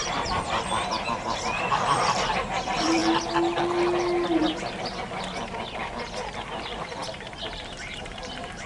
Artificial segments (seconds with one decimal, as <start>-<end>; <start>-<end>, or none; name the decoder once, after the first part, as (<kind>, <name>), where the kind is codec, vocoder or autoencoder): 0.0-3.0 (vocoder, BigVGAN v2); 6.5-8.7